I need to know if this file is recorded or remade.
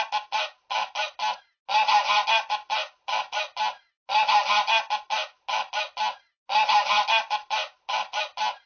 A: recorded